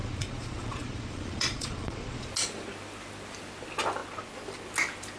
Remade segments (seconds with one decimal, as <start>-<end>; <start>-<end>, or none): 0.0-2.3